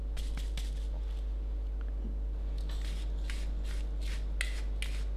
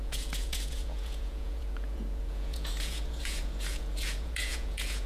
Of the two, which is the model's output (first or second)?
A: second